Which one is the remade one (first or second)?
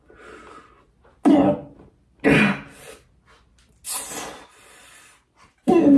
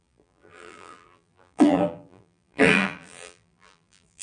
second